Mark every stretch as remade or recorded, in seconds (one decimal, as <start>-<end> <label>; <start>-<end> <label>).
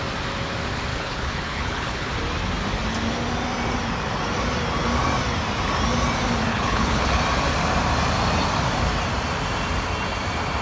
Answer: 0.0-0.9 recorded; 0.9-2.1 remade; 2.1-6.5 recorded; 6.5-7.2 remade; 7.2-10.6 recorded